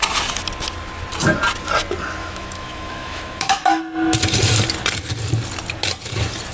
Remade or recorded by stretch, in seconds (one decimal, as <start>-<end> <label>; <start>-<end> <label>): 0.0-2.2 recorded; 2.2-3.8 remade; 3.8-6.5 recorded